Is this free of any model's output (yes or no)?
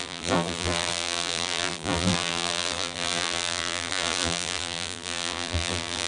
no